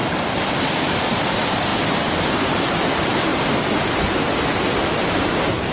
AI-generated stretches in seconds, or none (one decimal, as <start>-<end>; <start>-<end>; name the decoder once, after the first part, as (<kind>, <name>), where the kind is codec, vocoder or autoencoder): 0.0-3.3 (vocoder, BigVGAN v2); 3.9-5.7